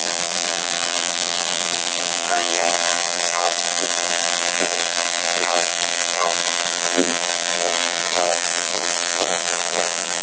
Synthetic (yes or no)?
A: yes